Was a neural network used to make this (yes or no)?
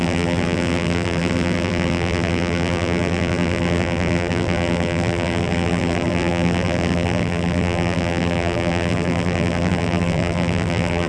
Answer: yes